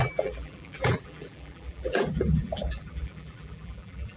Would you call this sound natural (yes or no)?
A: no